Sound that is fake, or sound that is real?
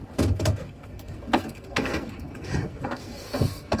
fake